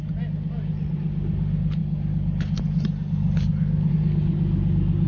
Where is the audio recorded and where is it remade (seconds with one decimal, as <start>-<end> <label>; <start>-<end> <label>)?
0.0-5.1 recorded